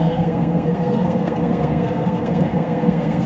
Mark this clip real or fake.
fake